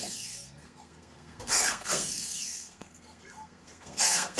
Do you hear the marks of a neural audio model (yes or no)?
yes